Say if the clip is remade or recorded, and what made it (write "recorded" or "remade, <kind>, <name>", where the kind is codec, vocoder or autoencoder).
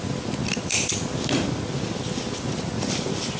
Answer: recorded